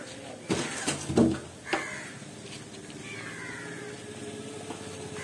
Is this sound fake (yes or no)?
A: no